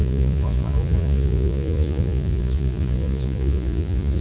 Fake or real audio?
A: fake